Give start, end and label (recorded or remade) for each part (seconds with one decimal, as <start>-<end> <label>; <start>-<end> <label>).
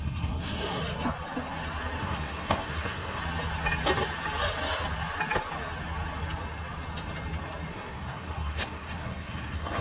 0.0-0.8 remade; 0.8-2.0 recorded; 2.0-3.2 remade; 3.2-7.7 recorded; 7.7-9.8 remade